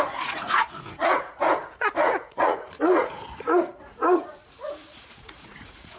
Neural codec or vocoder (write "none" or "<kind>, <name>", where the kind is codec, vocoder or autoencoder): vocoder, Vocos